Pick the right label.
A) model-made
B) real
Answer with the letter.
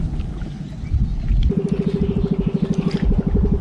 B